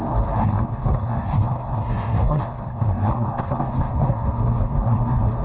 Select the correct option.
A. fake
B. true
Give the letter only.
A